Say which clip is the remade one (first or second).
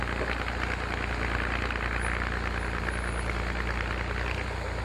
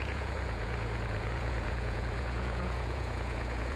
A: second